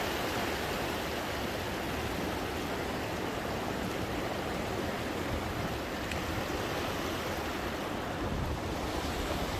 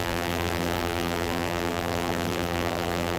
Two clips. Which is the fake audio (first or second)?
second